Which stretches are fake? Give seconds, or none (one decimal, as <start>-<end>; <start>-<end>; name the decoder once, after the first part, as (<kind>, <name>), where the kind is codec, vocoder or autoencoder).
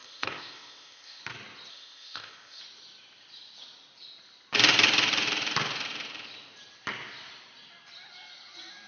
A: 0.0-1.2 (codec, ZipCodec); 1.7-2.6